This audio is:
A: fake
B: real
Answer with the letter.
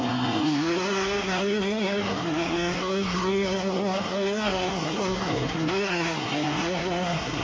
A